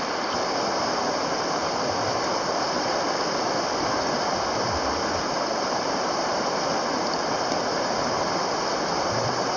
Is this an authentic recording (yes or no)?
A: yes